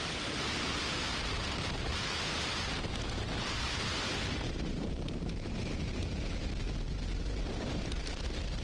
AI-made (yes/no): yes